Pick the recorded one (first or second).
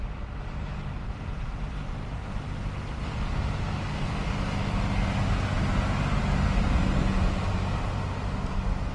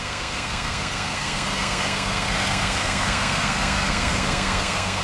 first